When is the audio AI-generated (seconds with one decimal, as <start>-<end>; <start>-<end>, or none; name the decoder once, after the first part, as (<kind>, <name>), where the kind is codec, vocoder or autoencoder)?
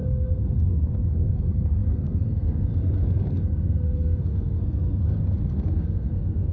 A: 0.0-6.5 (codec, SNAC)